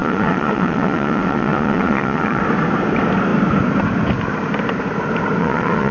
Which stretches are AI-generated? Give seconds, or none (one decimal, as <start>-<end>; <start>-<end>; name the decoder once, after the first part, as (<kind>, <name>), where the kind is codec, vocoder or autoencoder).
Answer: 0.0-2.4 (vocoder, Vocos); 5.4-5.9